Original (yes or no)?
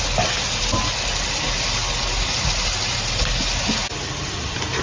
yes